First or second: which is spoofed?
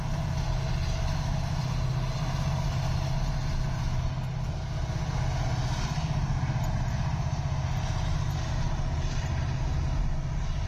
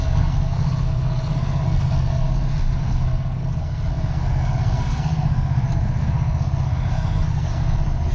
second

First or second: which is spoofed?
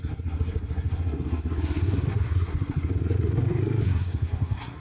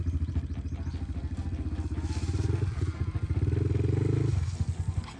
first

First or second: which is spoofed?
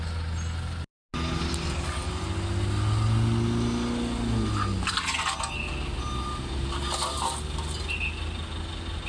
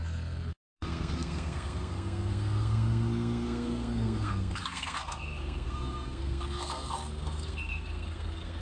second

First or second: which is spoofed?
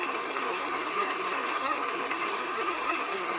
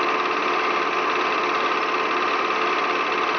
first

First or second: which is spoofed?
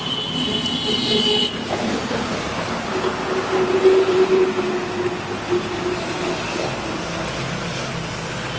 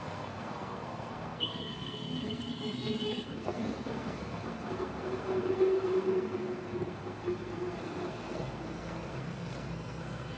second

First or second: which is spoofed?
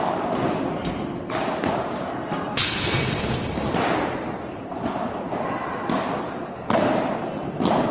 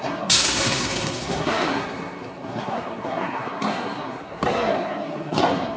second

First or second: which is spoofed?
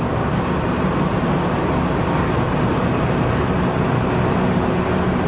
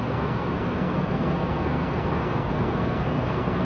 second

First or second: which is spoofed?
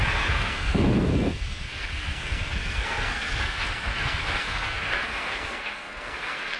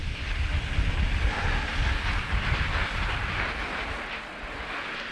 first